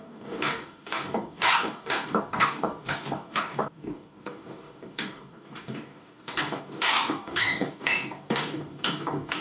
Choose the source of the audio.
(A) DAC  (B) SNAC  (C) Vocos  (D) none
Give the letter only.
A